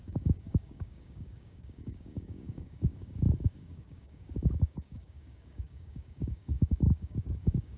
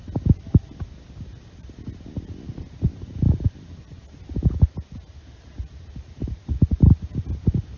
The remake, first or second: first